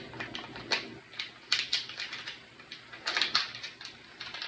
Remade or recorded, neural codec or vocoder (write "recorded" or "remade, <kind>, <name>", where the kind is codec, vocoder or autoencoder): recorded